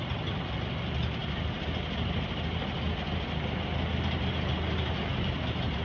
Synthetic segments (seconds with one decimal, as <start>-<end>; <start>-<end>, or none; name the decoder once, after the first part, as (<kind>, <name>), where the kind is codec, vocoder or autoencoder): none